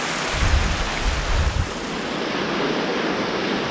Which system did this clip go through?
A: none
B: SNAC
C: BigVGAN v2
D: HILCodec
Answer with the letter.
A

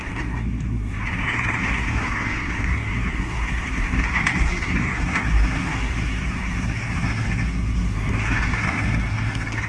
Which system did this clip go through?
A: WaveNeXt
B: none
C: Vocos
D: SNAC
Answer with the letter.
D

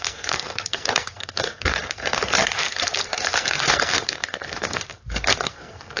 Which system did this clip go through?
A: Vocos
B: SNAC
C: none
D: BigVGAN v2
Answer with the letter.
B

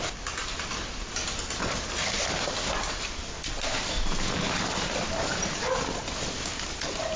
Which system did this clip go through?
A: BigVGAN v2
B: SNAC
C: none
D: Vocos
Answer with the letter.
C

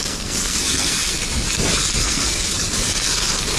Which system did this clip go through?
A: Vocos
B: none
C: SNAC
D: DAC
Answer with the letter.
C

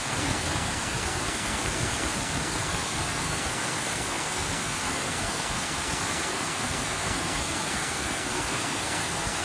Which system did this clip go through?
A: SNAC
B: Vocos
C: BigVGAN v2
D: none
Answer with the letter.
A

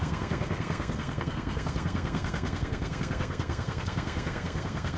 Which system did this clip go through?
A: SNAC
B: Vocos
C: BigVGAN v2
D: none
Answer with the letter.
A